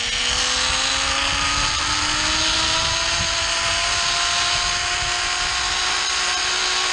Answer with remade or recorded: recorded